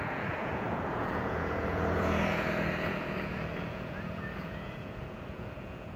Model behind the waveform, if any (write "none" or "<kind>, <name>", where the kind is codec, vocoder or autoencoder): vocoder, Vocos